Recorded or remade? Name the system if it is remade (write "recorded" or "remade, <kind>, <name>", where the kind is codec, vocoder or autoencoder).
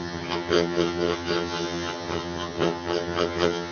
remade, vocoder, HiFi-GAN